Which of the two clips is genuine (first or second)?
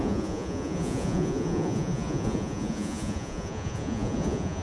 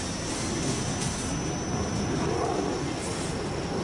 second